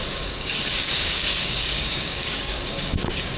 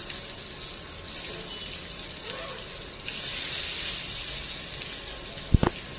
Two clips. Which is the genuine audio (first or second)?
second